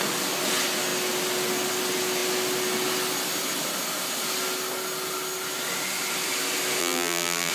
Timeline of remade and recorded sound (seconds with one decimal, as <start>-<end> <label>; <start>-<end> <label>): 0.0-6.8 recorded; 6.8-7.5 remade